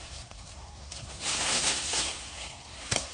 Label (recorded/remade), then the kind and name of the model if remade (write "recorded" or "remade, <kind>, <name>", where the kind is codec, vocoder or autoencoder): remade, codec, SNAC